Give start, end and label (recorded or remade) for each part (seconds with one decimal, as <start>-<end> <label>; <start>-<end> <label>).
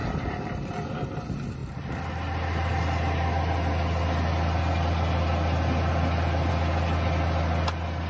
0.0-1.2 remade; 1.2-8.1 recorded